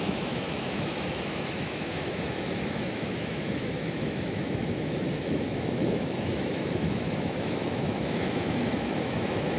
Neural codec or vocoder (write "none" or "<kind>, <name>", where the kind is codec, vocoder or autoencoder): autoencoder, DAC-VAE